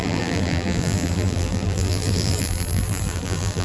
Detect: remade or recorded remade